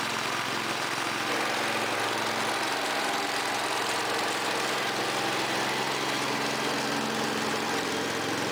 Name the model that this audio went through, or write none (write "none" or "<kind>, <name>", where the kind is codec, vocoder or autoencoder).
none